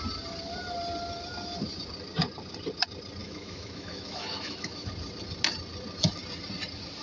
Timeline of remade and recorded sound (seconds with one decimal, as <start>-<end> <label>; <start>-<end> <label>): 0.0-3.2 recorded; 3.2-4.9 remade; 4.9-7.0 recorded